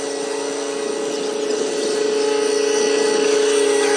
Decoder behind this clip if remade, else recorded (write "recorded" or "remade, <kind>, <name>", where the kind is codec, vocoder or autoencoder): recorded